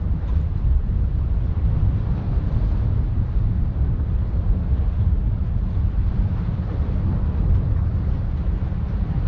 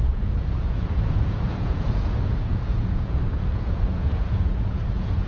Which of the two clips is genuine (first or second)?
first